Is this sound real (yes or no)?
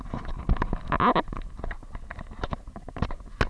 yes